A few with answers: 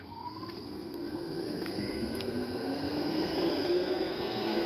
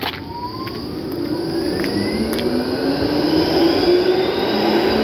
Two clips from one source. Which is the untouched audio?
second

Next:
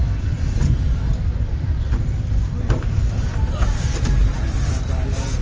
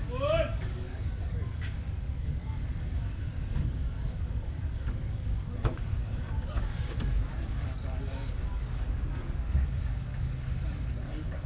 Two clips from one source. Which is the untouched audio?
first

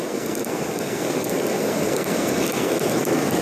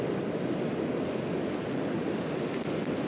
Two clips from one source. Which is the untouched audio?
second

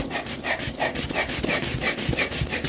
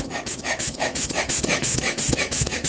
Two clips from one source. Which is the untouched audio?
first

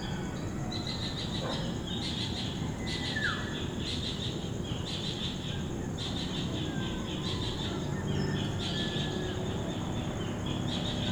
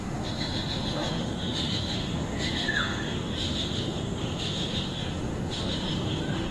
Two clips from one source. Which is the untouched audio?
first